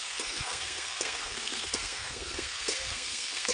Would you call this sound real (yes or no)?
no